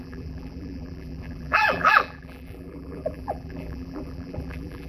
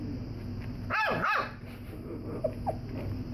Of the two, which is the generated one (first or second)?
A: first